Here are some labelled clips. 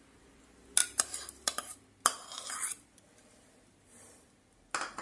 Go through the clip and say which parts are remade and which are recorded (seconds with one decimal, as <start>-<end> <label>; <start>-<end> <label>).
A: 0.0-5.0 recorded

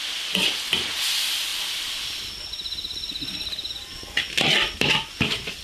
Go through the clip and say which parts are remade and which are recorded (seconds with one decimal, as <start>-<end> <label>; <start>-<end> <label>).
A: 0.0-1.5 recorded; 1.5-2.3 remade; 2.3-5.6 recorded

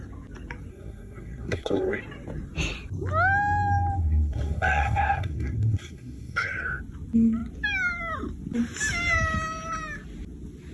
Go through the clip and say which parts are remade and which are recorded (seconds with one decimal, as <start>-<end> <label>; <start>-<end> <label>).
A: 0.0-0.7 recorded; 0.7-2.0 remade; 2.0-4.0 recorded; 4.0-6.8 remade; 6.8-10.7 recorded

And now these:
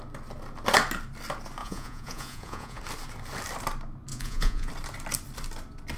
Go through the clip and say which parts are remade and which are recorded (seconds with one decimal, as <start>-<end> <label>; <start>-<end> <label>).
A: 0.0-1.6 recorded; 1.6-2.8 remade; 2.8-4.1 recorded; 4.1-4.7 remade; 4.7-6.0 recorded

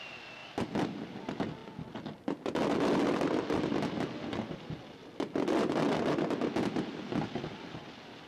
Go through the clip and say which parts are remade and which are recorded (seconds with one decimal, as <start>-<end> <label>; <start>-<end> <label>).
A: 0.0-8.3 recorded